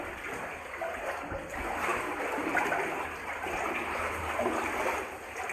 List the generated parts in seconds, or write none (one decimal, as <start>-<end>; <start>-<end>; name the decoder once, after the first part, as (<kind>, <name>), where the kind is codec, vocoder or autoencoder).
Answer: none